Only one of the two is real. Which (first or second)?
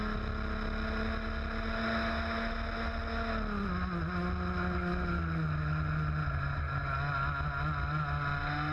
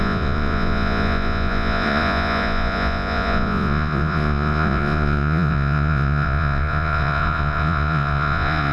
first